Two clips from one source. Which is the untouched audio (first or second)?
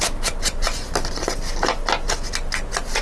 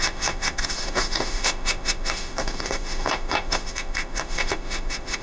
first